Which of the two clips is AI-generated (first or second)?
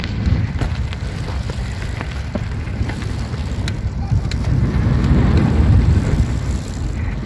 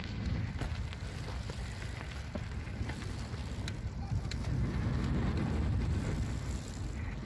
first